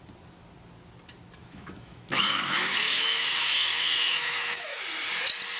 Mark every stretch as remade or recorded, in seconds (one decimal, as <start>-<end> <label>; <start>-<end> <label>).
0.0-1.4 recorded; 1.4-4.8 remade; 4.8-5.6 recorded